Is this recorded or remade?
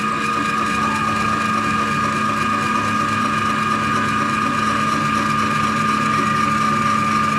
recorded